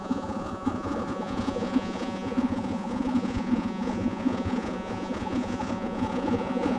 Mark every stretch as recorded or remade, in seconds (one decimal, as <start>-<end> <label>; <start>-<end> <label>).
0.0-6.8 remade